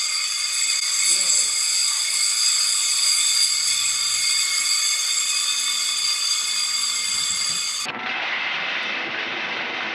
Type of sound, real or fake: real